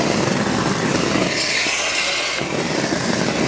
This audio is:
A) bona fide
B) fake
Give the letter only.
A